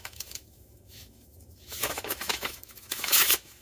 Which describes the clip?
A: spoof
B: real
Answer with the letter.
A